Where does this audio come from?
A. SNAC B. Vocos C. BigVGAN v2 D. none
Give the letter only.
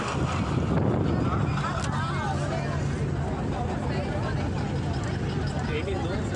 D